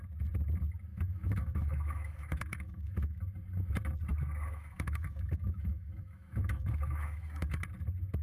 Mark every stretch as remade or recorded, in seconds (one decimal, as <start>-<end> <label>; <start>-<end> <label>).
0.0-0.9 recorded; 0.9-3.2 remade; 3.2-4.1 recorded; 4.1-7.6 remade; 7.6-8.2 recorded